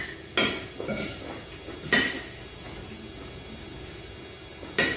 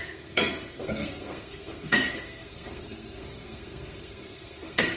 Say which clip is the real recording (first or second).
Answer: first